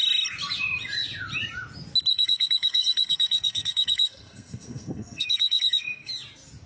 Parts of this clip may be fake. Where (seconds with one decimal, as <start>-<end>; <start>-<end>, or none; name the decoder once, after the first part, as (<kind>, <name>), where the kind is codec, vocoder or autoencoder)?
2.1-6.1 (codec, SNAC)